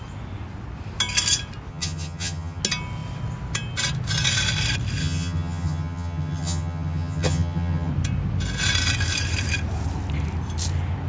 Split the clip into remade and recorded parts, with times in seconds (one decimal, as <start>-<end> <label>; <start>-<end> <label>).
0.0-1.7 recorded; 1.7-2.6 remade; 2.6-5.0 recorded; 5.0-7.9 remade; 7.9-11.1 recorded